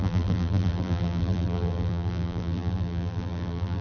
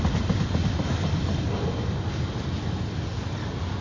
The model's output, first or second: first